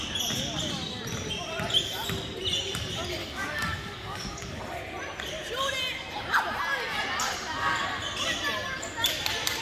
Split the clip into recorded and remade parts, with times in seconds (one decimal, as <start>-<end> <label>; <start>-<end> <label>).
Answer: 0.0-3.2 recorded; 3.2-4.6 remade; 4.6-9.6 recorded